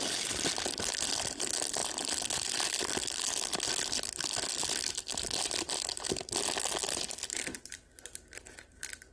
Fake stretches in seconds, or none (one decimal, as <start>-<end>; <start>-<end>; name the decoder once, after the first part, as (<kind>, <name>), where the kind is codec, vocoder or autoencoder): none